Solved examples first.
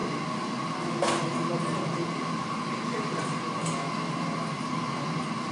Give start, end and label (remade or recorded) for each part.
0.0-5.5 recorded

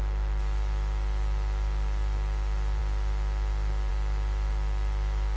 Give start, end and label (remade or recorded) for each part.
0.0-5.4 recorded